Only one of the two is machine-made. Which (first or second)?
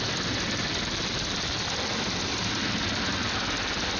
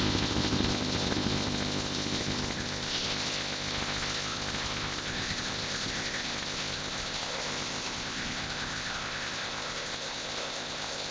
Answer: second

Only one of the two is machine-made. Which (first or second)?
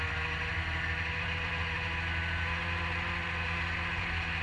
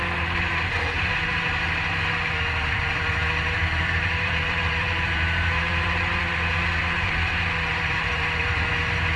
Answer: second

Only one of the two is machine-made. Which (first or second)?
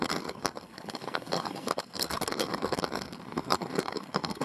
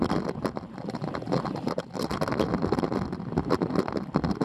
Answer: first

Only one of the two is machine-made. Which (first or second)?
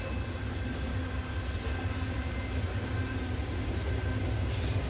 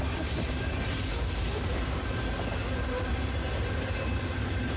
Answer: second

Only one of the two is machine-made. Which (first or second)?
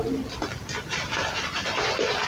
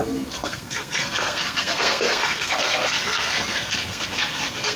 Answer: second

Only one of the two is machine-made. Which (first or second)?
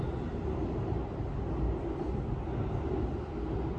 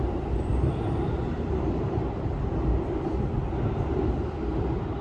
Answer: second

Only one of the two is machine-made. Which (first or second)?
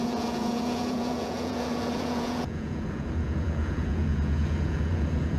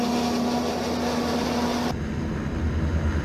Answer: first